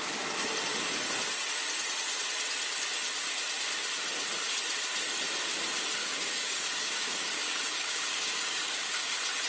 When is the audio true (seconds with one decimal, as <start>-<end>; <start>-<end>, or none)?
0.0-6.0; 9.1-9.5